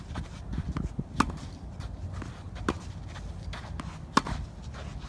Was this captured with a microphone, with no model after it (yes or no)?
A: yes